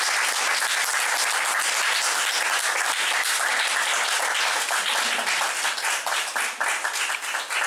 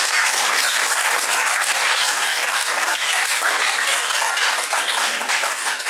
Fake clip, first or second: second